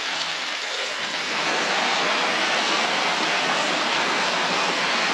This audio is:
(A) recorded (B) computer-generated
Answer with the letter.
B